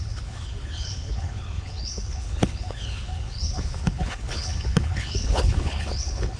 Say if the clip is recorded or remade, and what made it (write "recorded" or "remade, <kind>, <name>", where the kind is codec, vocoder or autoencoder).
remade, codec, HILCodec